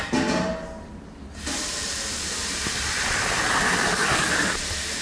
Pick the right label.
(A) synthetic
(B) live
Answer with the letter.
B